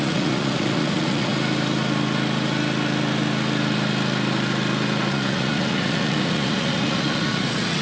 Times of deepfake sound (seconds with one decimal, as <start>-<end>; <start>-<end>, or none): 0.0-1.3; 5.1-7.8

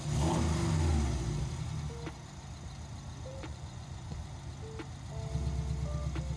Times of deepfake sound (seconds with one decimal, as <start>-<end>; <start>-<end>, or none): 3.3-4.3

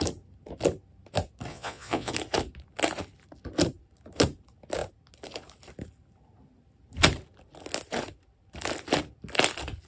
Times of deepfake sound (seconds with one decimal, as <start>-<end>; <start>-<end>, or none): 1.5-2.1

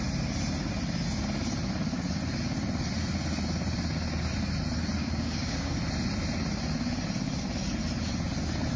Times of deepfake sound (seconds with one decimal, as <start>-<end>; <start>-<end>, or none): 5.0-5.7